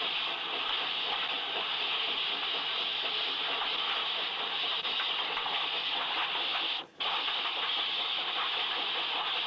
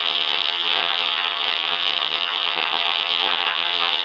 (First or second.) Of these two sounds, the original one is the first